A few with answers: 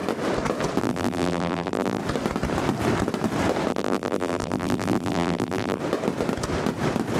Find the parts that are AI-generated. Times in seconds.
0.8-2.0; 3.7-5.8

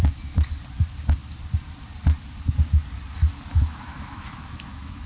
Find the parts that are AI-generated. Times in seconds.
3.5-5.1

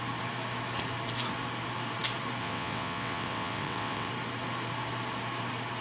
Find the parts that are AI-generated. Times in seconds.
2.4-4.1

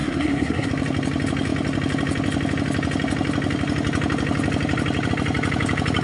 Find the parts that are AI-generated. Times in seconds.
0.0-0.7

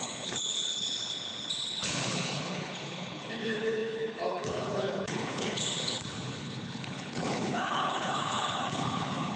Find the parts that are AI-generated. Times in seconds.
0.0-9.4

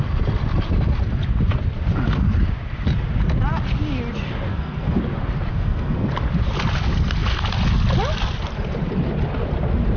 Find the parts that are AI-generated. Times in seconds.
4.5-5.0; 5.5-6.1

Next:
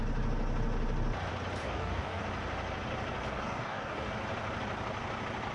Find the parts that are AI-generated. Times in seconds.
1.6-2.2; 3.3-4.1